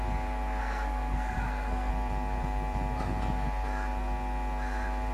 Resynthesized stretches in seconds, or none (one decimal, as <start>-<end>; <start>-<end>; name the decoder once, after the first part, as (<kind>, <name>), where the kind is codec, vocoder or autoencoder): 0.6-1.9 (codec, SNAC)